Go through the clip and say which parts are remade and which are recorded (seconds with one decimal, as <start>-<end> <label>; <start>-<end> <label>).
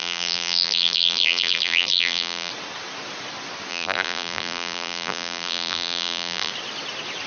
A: 0.0-2.5 remade; 2.5-3.7 recorded; 3.7-6.5 remade; 6.5-7.3 recorded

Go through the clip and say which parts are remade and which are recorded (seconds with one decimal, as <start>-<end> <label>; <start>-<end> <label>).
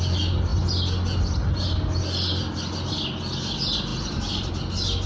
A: 0.0-3.9 recorded; 3.9-4.5 remade; 4.5-5.1 recorded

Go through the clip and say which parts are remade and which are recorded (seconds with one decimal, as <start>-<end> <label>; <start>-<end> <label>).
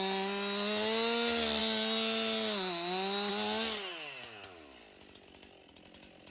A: 0.0-6.3 recorded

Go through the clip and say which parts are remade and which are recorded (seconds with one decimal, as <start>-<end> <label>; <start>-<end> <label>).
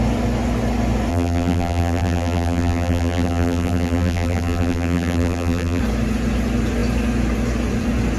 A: 0.0-1.1 recorded; 1.1-5.8 remade; 5.8-8.2 recorded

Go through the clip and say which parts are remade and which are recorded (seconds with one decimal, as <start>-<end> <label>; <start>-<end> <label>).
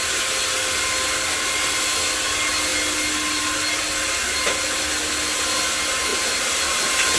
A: 0.0-6.1 recorded; 6.1-6.6 remade; 6.6-7.2 recorded